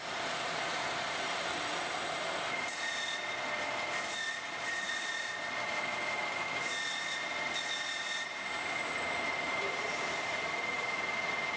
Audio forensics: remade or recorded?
recorded